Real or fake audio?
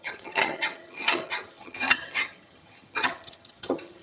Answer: fake